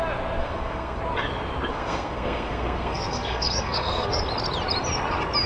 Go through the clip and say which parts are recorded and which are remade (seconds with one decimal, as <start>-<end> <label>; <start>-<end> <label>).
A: 0.0-0.4 recorded; 0.4-1.0 remade; 1.0-1.7 recorded; 1.7-4.2 remade; 4.2-5.5 recorded